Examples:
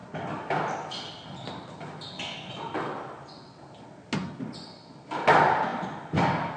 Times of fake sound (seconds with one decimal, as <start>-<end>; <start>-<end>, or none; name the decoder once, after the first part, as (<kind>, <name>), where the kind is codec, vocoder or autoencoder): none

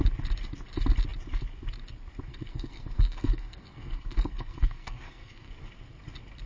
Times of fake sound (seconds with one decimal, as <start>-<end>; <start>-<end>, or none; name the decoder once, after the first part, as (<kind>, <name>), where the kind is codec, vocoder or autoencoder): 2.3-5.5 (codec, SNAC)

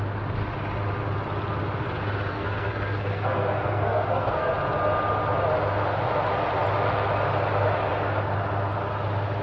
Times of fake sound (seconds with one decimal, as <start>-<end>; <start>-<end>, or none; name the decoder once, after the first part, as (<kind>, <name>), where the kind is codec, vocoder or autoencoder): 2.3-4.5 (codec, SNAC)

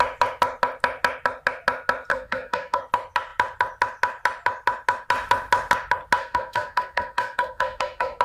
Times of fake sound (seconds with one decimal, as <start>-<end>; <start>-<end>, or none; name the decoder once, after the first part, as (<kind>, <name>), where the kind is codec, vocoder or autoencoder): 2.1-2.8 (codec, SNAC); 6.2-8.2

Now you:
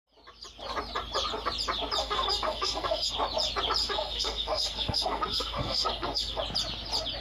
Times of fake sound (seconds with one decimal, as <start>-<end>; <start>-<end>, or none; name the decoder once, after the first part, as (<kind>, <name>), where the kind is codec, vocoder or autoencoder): 2.0-3.1 (codec, SNAC); 3.8-6.4

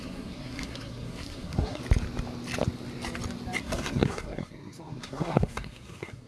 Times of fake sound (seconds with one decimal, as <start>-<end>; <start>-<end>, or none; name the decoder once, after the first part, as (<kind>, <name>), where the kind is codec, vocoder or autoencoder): 0.0-1.8 (codec, SNAC); 3.6-6.3